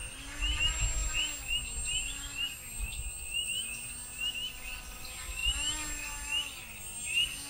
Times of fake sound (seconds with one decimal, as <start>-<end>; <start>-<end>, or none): 0.0-0.6